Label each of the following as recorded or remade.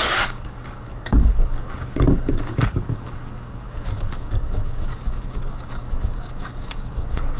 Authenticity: remade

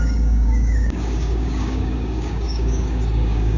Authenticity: remade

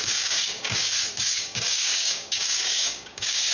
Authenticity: remade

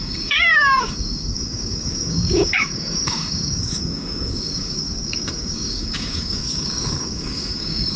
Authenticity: remade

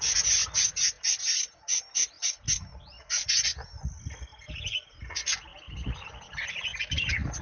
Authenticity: recorded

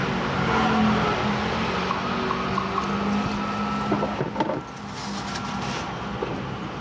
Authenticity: recorded